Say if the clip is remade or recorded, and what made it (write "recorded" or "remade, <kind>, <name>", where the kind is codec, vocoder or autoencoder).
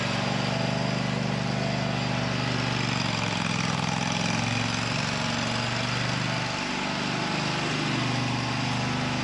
recorded